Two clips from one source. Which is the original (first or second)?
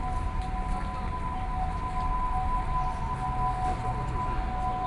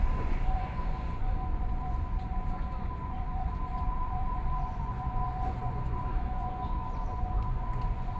first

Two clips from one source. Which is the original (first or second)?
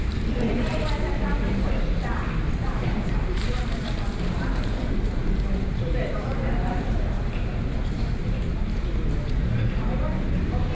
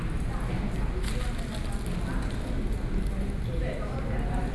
second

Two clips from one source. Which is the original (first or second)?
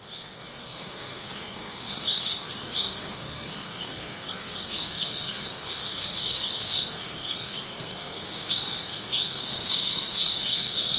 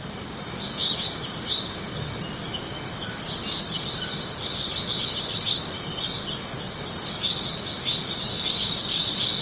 second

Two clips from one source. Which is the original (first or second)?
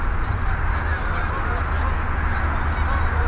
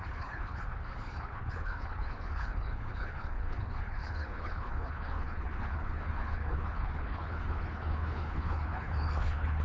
first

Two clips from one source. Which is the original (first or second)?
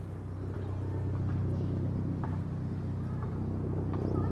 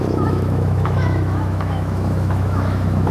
first